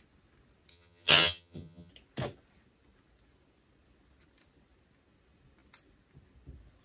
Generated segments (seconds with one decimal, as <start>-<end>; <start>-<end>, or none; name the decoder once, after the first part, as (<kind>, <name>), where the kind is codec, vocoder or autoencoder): 0.7-1.9 (vocoder, HiFi-GAN)